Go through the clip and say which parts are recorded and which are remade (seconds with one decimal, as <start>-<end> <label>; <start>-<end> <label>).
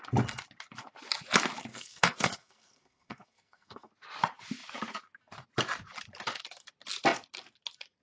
0.0-1.7 recorded; 1.7-3.9 remade; 3.9-8.0 recorded